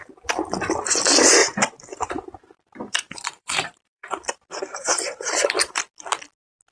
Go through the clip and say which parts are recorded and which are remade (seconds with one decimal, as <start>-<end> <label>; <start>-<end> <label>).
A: 0.0-1.4 recorded; 1.4-5.4 remade; 5.4-6.7 recorded